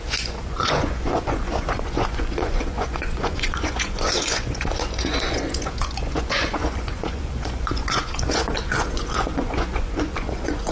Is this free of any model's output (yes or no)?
no